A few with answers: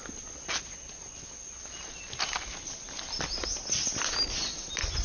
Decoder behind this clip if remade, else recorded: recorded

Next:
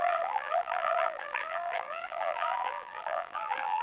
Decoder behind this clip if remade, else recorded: remade, vocoder, BigVGAN v2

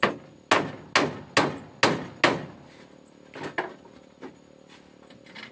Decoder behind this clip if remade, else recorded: recorded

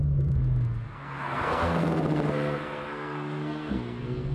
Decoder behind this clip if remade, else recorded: remade, codec, SNAC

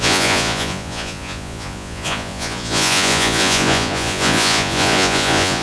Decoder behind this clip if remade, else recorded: remade, vocoder, Vocos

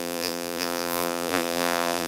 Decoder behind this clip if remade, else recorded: remade, vocoder, BigVGAN v2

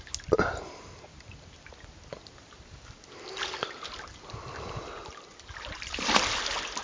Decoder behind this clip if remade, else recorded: recorded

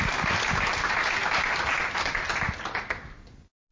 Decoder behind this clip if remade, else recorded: recorded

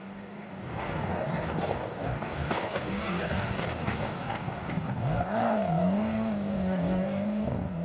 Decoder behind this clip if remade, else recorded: remade, codec, DAC